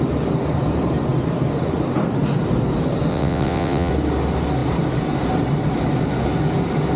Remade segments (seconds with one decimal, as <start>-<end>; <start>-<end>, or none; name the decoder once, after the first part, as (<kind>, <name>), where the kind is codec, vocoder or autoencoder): 3.1-3.9 (vocoder, WaveNeXt)